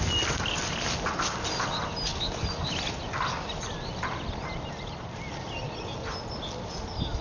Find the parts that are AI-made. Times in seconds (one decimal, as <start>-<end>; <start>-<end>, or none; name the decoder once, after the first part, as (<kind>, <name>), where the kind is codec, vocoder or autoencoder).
none